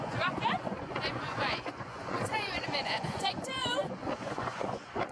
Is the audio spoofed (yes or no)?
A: yes